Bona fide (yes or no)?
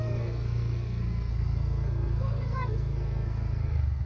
no